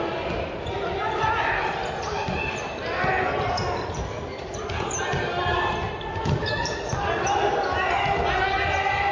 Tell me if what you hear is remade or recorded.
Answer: recorded